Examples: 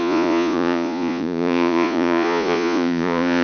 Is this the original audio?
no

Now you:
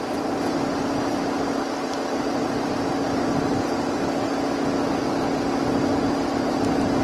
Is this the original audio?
yes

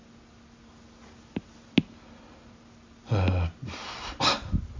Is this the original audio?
yes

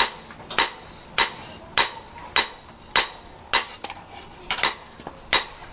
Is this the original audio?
yes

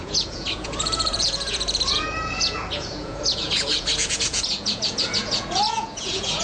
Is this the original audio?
no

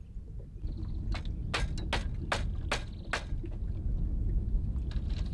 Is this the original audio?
yes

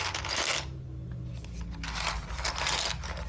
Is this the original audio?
yes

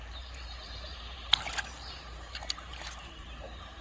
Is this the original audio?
no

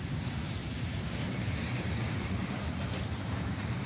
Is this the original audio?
no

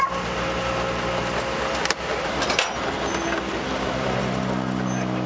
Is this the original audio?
yes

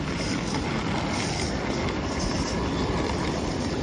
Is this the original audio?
yes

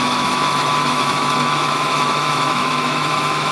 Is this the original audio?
no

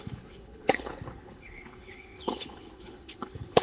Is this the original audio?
no